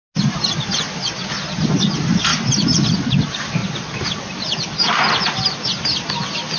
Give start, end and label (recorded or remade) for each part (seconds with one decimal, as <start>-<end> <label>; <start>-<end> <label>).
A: 0.0-6.6 recorded